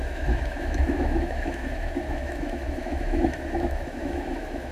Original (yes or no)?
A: no